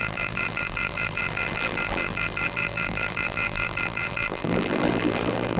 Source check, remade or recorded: remade